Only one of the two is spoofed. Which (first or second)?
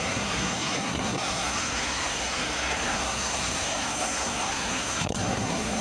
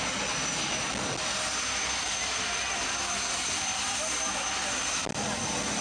first